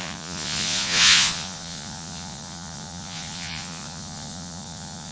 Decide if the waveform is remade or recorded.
remade